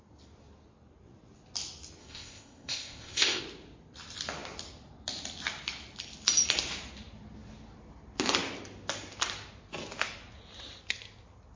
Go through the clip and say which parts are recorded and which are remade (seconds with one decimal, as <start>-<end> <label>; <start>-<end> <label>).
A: 0.0-2.0 recorded; 2.0-3.4 remade; 3.4-11.6 recorded